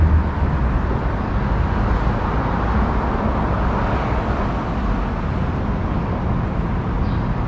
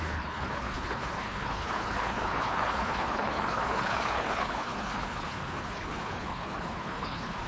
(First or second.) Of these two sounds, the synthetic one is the second